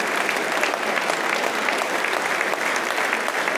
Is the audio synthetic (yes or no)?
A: no